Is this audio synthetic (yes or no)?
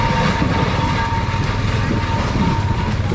no